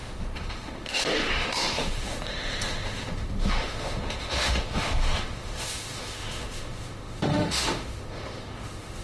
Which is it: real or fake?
fake